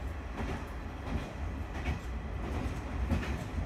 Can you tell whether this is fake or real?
real